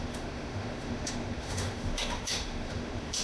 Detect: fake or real fake